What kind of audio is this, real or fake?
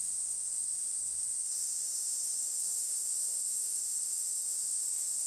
fake